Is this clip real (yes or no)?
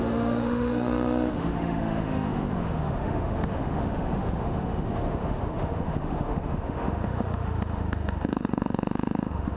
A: no